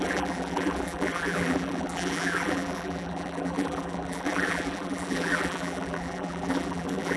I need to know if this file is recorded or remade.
remade